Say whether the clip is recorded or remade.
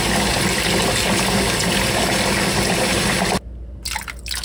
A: recorded